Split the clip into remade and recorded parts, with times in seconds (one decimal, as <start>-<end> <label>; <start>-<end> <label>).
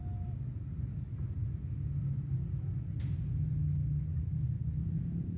0.0-5.4 recorded